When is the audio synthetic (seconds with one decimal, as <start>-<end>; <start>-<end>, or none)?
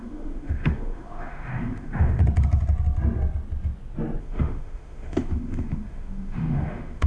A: 0.0-2.2; 4.2-7.1